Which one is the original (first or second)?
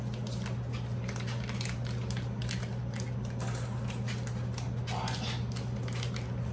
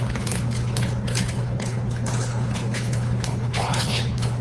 first